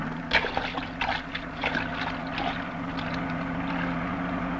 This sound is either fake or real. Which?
real